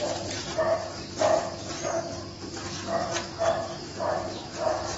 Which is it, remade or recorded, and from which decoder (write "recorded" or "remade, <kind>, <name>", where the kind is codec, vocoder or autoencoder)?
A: recorded